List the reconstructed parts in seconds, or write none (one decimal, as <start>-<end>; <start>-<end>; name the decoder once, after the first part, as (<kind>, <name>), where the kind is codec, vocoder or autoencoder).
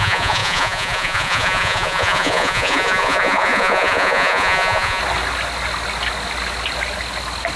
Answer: 0.0-5.0 (vocoder, Vocos)